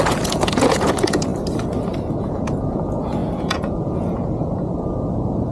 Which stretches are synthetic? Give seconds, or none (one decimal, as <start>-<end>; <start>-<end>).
0.0-1.3; 2.2-5.5